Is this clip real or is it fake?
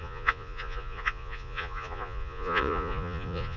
fake